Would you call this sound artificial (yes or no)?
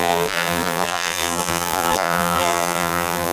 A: yes